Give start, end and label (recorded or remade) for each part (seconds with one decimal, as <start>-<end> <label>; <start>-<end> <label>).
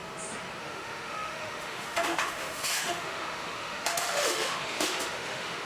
0.0-0.6 recorded; 0.6-5.6 remade